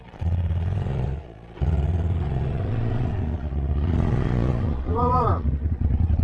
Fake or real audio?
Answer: fake